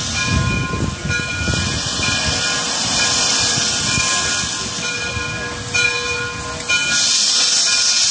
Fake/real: real